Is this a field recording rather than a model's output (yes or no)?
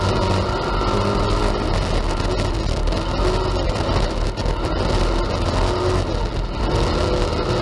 yes